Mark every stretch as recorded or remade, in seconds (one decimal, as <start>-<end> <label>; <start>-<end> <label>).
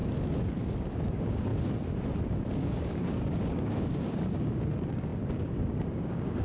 0.0-0.6 recorded; 0.6-1.5 remade; 1.5-2.6 recorded; 2.6-6.4 remade